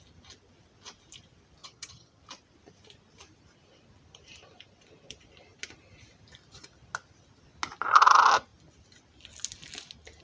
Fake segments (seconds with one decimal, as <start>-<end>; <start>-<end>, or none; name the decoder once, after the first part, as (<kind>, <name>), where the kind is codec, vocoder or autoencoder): 1.6-2.2 (vocoder, HiFi-GAN)